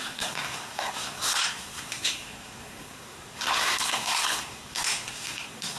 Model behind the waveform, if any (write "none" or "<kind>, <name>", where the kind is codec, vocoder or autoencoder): codec, SNAC